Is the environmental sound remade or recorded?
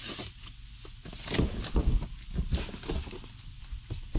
recorded